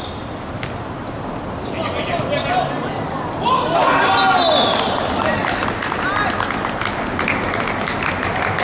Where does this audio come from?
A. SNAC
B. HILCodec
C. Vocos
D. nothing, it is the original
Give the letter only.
D